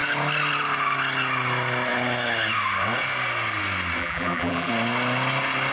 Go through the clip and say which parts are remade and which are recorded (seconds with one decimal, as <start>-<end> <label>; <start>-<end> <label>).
0.0-4.0 recorded; 4.0-4.7 remade; 4.7-5.7 recorded